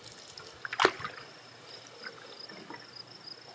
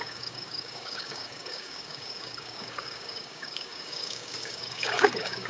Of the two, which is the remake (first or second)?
second